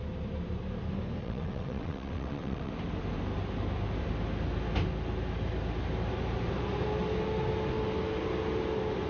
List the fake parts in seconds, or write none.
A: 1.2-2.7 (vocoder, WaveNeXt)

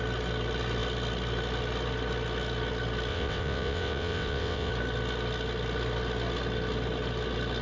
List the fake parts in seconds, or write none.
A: 3.1-4.7 (vocoder, WaveNeXt)

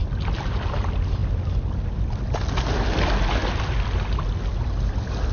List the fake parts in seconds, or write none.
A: none